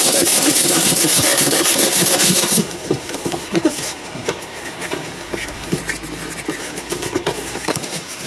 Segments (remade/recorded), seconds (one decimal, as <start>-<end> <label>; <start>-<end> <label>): 0.0-5.8 remade; 5.8-6.6 recorded; 6.6-8.3 remade